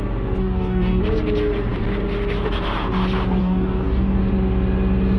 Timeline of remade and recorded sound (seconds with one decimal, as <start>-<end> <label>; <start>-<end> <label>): 0.0-0.4 recorded; 0.4-1.0 remade; 1.0-3.4 recorded; 3.4-4.2 remade; 4.2-5.2 recorded

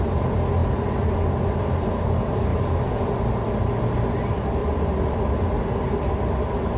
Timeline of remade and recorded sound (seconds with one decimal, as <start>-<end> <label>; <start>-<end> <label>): 0.0-2.5 recorded; 2.5-3.1 remade; 3.1-4.6 recorded; 4.6-5.3 remade; 5.3-6.8 recorded

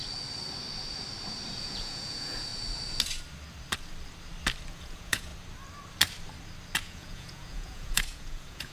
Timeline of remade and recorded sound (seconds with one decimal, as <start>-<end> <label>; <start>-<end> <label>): 0.0-1.6 recorded; 1.6-2.5 remade; 2.5-4.7 recorded; 4.7-5.3 remade; 5.3-6.8 recorded; 6.8-8.7 remade

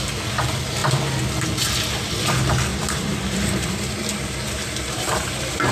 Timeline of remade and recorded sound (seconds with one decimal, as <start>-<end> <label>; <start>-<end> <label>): 0.0-2.7 recorded; 2.7-5.3 remade; 5.3-5.7 recorded

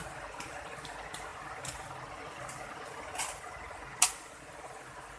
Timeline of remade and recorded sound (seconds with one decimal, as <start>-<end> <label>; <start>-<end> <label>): 0.0-5.2 recorded